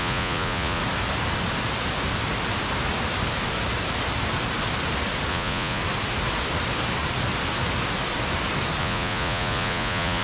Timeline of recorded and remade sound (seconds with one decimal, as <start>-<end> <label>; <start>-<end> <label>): 0.0-0.8 remade; 0.8-5.3 recorded; 5.3-5.8 remade; 5.8-8.8 recorded; 8.8-10.2 remade